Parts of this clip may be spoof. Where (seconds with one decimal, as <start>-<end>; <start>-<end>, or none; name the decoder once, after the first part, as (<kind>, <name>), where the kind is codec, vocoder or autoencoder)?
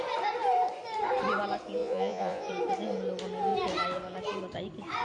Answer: 1.8-2.5 (vocoder, Vocos)